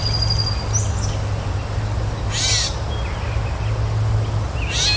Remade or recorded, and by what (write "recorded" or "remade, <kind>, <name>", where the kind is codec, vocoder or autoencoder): recorded